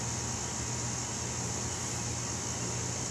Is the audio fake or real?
real